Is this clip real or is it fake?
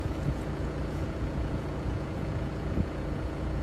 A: fake